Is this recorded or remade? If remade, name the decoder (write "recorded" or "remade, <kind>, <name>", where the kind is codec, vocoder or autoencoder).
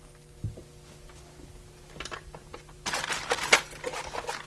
recorded